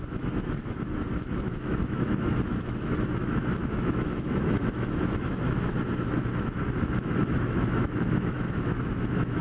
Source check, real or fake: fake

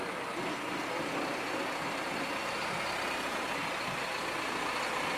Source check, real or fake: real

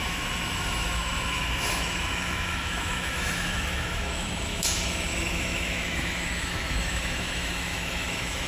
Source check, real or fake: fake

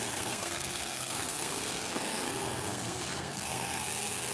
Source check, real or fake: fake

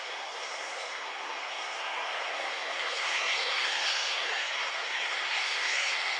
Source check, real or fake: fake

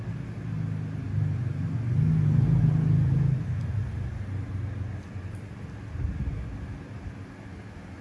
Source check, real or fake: real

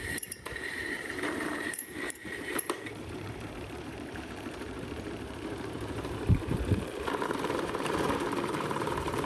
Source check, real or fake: fake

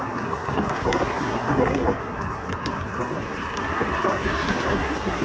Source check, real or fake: fake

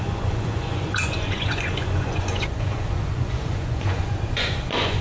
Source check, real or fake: fake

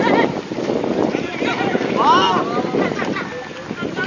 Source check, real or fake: real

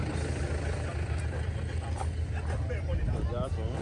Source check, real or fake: real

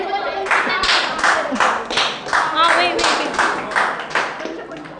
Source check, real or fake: real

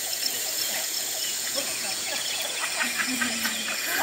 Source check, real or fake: fake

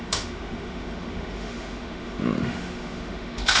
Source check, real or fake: fake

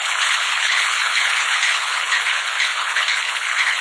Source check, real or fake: fake